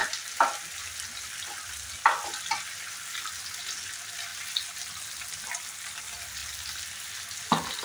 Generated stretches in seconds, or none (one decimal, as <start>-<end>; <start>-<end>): none